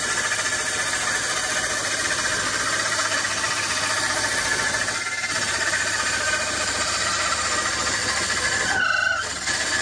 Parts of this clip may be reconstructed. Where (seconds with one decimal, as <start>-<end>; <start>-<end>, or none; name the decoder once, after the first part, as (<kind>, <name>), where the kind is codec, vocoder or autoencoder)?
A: 1.8-2.4 (vocoder, BigVGAN v2)